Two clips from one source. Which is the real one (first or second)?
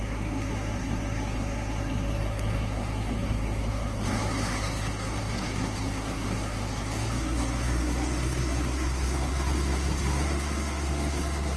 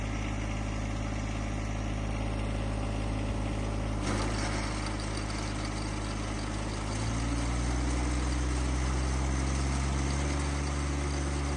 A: second